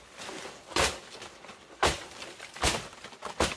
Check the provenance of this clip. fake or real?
real